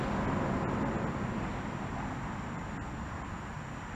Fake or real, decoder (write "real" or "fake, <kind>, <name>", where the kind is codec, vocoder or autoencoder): real